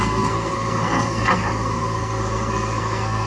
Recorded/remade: remade